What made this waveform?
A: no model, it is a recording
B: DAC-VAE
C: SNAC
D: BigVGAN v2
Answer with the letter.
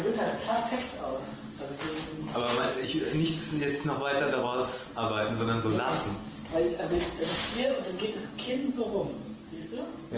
A